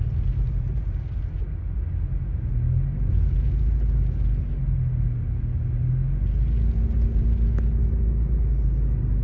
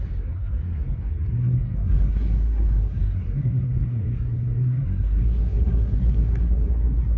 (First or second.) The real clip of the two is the first